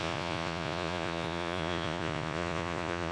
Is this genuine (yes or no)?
no